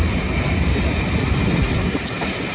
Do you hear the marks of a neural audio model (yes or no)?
no